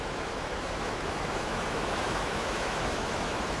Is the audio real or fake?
fake